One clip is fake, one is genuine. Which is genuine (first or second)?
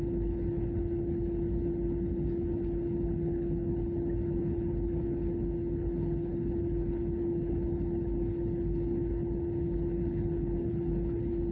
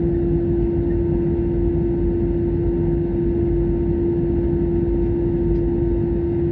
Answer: second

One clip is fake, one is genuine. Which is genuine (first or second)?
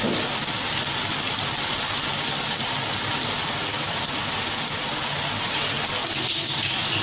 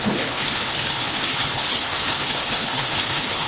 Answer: first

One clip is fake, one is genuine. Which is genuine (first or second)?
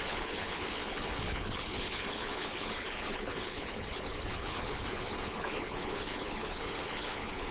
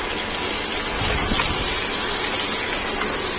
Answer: second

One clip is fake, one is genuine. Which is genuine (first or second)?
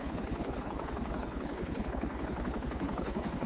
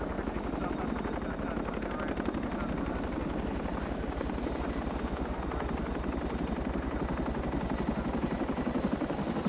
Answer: second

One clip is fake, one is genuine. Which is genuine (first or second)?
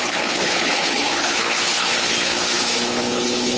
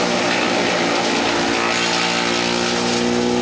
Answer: second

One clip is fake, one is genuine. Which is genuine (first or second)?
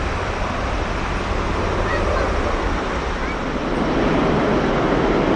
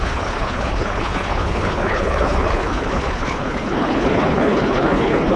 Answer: first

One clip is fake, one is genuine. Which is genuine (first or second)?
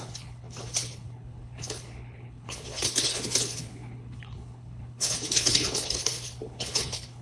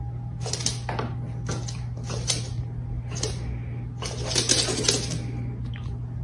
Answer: second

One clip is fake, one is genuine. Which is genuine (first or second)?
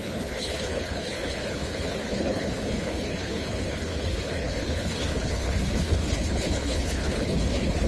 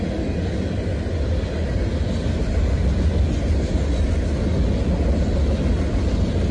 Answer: second